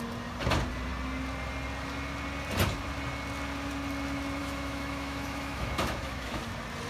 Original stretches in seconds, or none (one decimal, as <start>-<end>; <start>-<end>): 0.0-4.4; 6.4-6.9